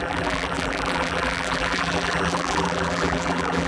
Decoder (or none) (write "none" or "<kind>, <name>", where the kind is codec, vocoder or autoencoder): vocoder, BigVGAN v2